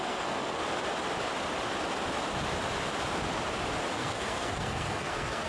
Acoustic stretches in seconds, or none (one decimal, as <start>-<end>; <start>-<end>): 0.6-3.9